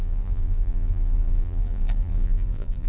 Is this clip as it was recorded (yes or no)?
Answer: no